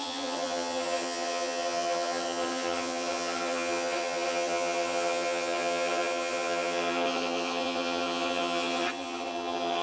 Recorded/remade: remade